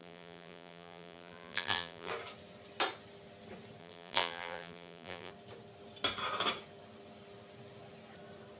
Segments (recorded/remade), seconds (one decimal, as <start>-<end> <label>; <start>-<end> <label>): 0.0-2.1 remade; 2.1-3.8 recorded; 3.8-5.3 remade; 5.3-8.6 recorded